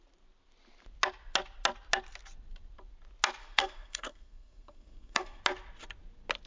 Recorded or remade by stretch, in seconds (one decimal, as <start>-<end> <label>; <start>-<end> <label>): 0.0-3.4 recorded; 3.4-5.4 remade; 5.4-6.5 recorded